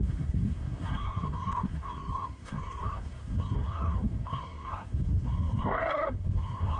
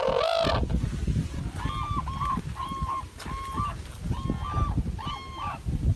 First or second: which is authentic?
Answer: second